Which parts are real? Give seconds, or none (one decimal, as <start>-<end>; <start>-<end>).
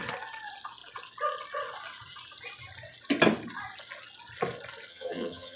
0.0-4.9